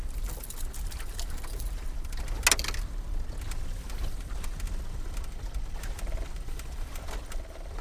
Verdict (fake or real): real